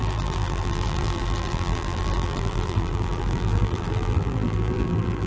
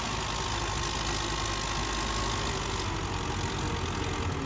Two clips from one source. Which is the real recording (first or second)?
second